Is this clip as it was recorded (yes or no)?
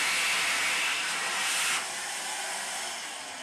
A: yes